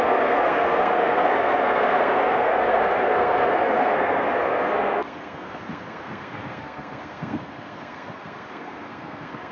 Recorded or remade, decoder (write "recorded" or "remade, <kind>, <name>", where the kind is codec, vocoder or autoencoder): remade, codec, SNAC